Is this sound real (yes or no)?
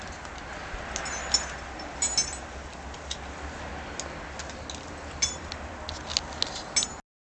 yes